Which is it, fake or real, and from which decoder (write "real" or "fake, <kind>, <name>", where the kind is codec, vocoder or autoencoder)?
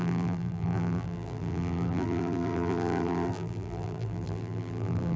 fake, vocoder, BigVGAN v2